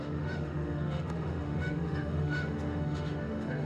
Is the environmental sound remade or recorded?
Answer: remade